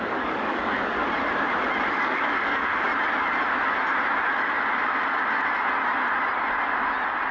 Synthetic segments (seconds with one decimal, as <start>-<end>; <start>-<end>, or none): 0.0-1.0; 1.9-2.9